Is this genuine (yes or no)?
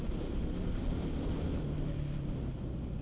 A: yes